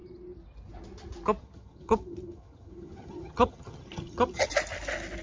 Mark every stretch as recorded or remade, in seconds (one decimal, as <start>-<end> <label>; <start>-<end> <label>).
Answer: 0.0-1.4 recorded; 1.4-4.5 remade; 4.5-5.2 recorded